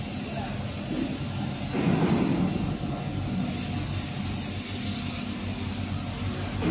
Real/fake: real